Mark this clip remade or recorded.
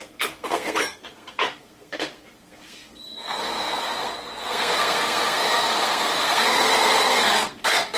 remade